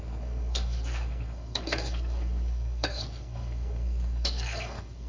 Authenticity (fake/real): fake